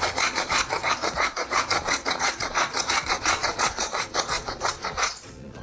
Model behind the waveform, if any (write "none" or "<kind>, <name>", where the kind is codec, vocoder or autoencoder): vocoder, Vocos